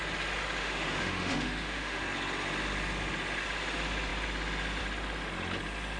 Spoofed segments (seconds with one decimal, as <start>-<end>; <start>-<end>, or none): 0.6-2.0